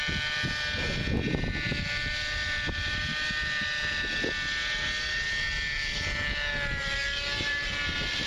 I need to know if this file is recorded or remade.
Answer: recorded